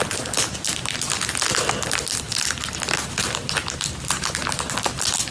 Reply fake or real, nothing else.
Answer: real